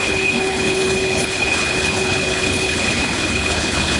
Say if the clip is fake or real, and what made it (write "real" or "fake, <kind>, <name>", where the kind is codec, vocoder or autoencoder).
fake, codec, HILCodec